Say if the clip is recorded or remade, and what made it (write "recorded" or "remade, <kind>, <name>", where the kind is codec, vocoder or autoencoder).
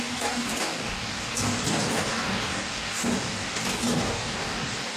remade, codec, DAC